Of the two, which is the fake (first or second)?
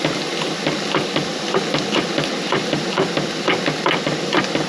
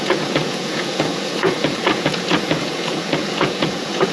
second